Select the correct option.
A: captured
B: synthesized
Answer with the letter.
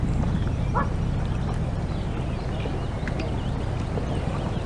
A